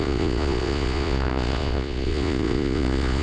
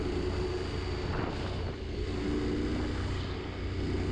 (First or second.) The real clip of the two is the second